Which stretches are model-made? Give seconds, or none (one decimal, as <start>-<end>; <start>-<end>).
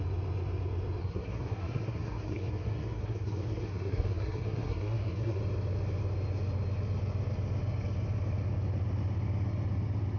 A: 1.0-5.4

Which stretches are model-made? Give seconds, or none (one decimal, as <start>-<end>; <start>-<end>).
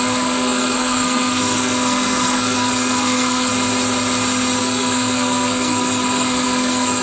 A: 0.0-3.5; 4.6-7.0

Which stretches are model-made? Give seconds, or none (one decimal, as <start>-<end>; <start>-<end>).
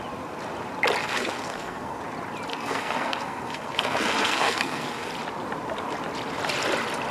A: 1.0-2.0; 2.5-5.1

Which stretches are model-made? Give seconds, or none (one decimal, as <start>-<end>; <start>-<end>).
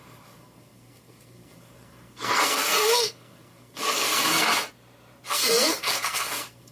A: 0.0-4.5; 5.3-6.7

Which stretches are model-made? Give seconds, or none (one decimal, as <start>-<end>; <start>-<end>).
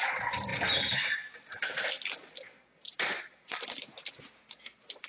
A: none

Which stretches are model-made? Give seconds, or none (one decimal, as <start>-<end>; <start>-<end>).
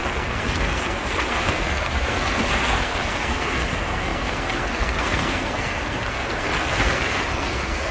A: 0.0-7.9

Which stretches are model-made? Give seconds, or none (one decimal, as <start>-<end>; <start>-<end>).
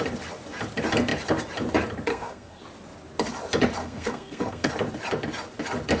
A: 2.1-2.6; 3.8-4.7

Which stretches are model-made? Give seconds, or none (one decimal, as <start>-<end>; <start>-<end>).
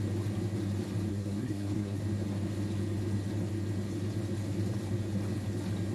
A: 1.1-2.0